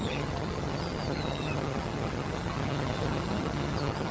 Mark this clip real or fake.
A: fake